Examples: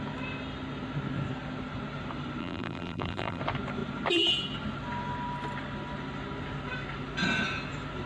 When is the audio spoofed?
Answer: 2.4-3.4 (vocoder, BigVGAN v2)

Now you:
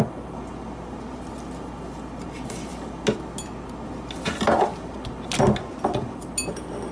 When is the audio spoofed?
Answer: none

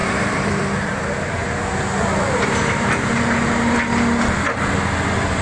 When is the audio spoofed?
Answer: 0.0-0.6 (vocoder, BigVGAN v2)

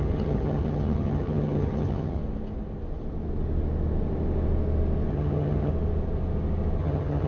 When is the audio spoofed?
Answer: 0.0-2.2 (vocoder, HiFi-GAN); 5.1-5.7; 6.8-7.3

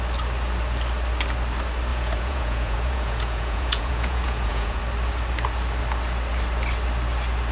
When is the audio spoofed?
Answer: 1.9-4.8 (vocoder, Vocos)

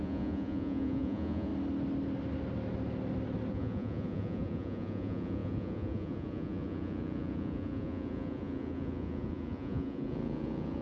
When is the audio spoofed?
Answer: 0.0-1.5 (vocoder, Vocos); 3.5-10.8